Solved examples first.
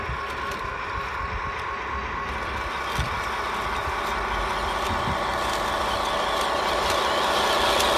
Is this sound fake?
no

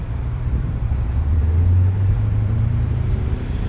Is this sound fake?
yes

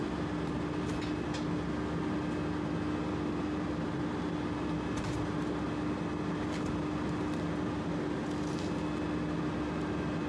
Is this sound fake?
no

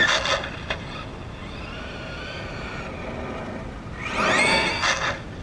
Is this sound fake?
no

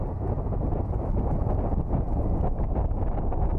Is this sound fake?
no